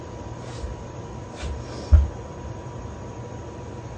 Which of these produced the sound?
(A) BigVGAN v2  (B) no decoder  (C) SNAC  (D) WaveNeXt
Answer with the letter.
B